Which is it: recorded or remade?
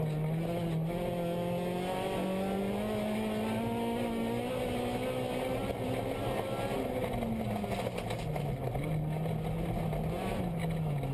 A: recorded